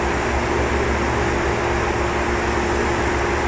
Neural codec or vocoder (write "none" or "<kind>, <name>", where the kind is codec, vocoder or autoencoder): none